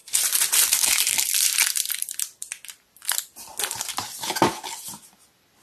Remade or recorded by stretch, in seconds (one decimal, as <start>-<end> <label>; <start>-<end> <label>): 0.0-3.4 remade; 3.4-5.6 recorded